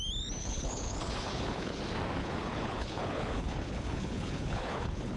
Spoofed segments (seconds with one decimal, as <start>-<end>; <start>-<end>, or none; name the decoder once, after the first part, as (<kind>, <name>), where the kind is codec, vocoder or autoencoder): 0.4-1.8 (codec, HILCodec); 2.2-5.2